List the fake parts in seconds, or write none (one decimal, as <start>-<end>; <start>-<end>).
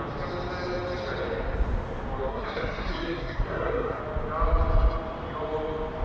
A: 2.3-4.0